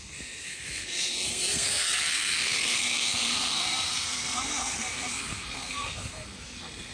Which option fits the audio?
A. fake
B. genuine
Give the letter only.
A